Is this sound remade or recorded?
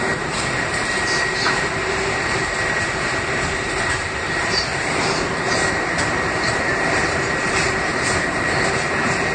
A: remade